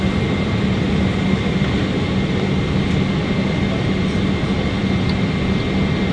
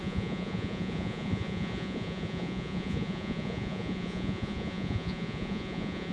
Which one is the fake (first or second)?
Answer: second